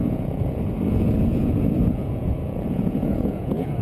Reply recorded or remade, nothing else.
remade